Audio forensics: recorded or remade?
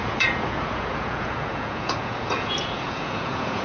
remade